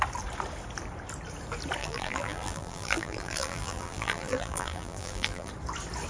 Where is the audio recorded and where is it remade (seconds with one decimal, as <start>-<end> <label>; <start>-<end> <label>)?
0.0-1.8 recorded; 1.8-5.5 remade; 5.5-6.1 recorded